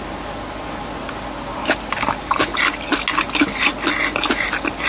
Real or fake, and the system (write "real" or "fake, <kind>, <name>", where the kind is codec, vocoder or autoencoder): real